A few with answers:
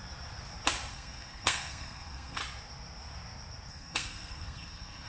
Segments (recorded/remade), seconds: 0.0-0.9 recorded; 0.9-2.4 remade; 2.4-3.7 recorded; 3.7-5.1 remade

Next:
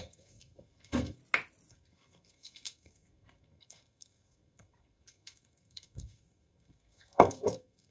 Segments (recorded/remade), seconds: 0.0-1.2 remade; 1.2-1.7 recorded; 1.7-7.9 remade

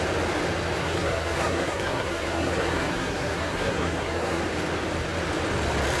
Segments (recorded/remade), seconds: 0.0-0.8 recorded; 0.8-4.4 remade; 4.4-6.0 recorded

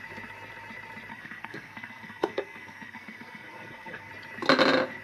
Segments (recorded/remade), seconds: 0.0-1.1 recorded; 1.1-4.1 remade; 4.1-5.0 recorded

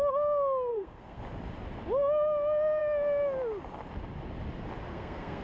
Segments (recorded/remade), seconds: 0.0-0.7 recorded; 0.7-1.2 remade; 1.2-4.9 recorded; 4.9-5.4 remade

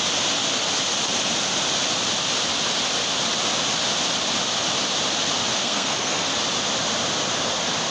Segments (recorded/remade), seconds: 0.0-5.6 recorded; 5.6-6.3 remade; 6.3-7.9 recorded